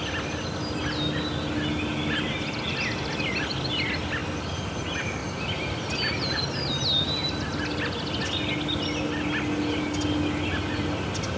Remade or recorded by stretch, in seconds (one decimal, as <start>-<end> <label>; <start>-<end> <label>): 0.0-11.4 recorded

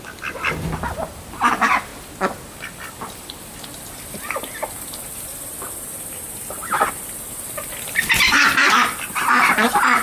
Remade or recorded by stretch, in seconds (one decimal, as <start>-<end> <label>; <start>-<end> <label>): 0.0-10.0 recorded

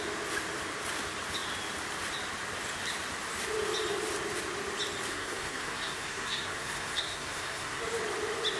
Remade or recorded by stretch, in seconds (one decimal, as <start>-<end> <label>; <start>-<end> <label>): 0.0-5.1 recorded; 5.1-7.8 remade; 7.8-8.6 recorded